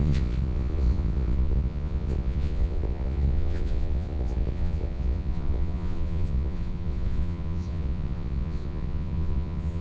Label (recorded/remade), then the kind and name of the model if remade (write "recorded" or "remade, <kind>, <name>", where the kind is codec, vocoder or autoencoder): remade, vocoder, Vocos